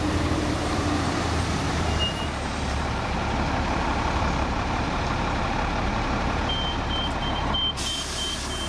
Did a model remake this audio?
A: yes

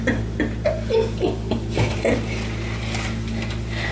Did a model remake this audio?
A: no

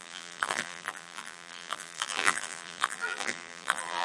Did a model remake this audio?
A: yes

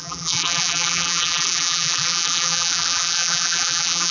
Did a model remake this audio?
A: yes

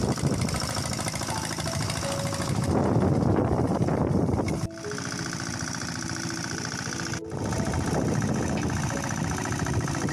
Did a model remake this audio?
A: no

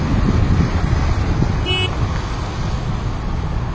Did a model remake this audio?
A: no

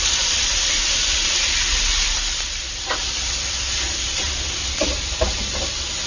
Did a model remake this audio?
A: yes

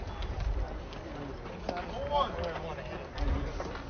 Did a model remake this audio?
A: no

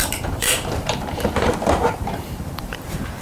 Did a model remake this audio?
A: yes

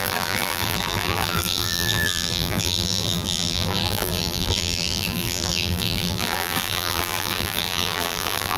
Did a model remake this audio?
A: yes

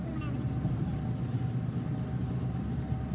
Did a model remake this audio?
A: no